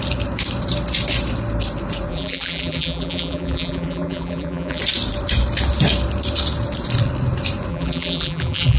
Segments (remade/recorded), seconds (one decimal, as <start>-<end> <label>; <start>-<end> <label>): 0.0-2.1 recorded; 2.1-4.8 remade; 4.8-7.7 recorded; 7.7-8.8 remade